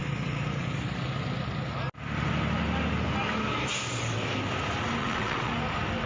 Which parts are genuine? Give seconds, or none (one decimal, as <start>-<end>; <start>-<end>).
0.0-5.0; 5.5-6.1